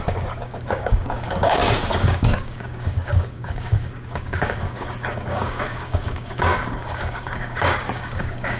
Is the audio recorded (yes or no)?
no